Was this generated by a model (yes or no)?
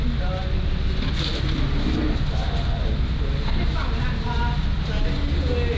no